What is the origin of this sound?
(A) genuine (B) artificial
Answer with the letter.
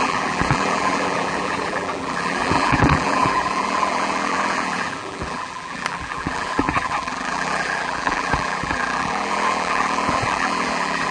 B